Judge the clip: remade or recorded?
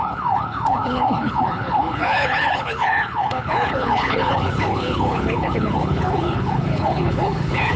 remade